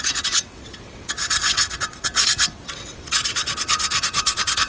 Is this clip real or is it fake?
fake